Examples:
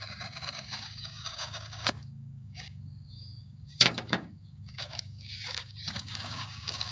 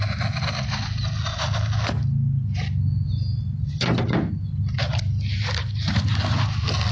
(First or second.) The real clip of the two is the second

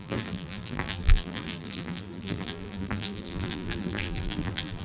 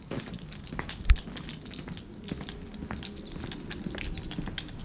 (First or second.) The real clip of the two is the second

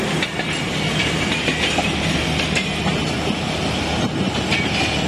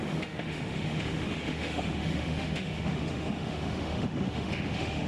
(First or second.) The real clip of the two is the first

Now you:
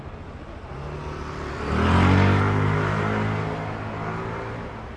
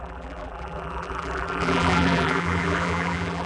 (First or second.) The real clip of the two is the first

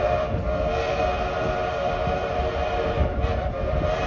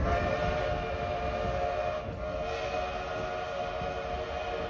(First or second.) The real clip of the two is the second